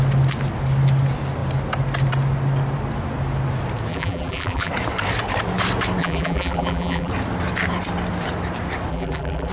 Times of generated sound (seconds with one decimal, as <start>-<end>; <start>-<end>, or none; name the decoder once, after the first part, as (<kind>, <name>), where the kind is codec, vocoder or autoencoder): 3.9-4.7 (vocoder, BigVGAN v2); 6.0-7.1; 8.9-9.5